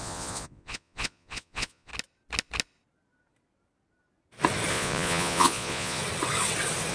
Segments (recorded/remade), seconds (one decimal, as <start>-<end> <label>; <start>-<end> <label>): 0.0-1.9 remade; 1.9-4.7 recorded; 4.7-6.0 remade; 6.0-6.9 recorded